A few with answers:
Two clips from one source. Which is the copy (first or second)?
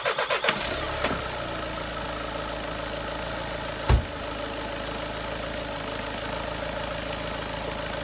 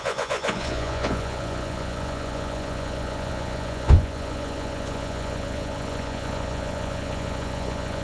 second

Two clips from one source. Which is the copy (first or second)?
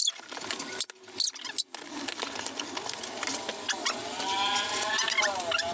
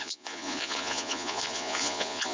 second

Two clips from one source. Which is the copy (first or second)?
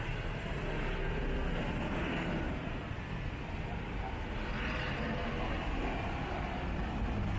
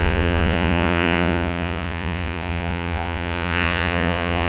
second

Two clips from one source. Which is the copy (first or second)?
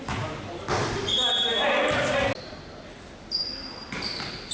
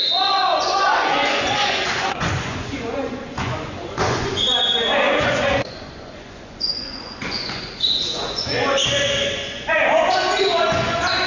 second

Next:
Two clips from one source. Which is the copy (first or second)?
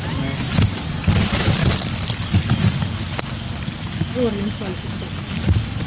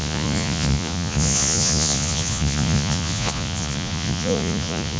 second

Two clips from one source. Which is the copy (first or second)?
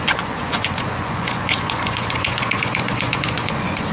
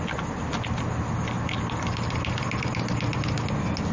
first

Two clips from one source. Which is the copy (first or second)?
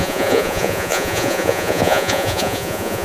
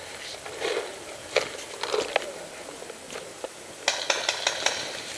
first